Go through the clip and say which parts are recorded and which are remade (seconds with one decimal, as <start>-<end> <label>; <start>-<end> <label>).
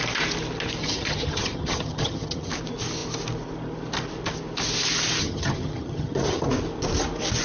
0.0-0.8 recorded; 0.8-2.5 remade; 2.5-5.2 recorded; 5.2-6.5 remade; 6.5-7.4 recorded